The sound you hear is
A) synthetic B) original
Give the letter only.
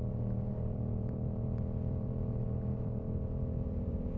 A